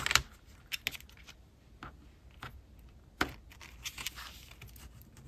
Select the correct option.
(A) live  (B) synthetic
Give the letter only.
A